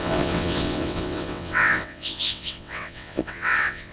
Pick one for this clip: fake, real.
fake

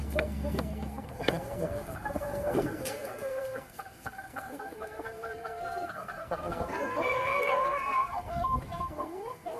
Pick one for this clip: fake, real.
fake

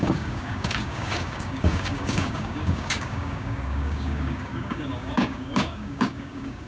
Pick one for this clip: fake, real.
fake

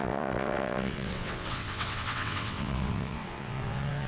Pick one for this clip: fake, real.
fake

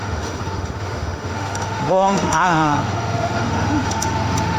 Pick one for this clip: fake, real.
fake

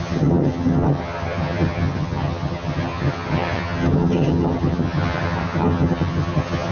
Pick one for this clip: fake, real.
fake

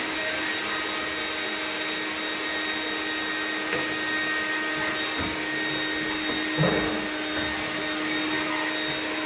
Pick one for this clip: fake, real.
real